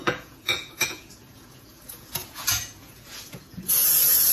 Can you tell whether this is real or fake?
fake